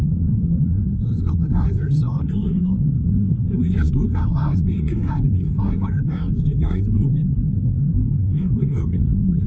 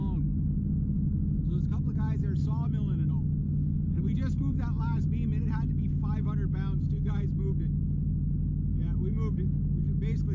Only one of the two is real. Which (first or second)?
second